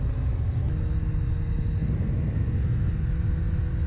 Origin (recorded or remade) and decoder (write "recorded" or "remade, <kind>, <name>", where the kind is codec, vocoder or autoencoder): recorded